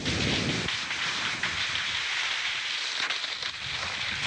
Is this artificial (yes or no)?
no